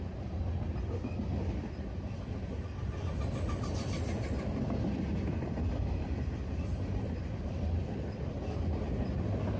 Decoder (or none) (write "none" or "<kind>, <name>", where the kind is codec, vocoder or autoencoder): none